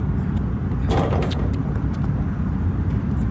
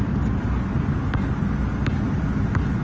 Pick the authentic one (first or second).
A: second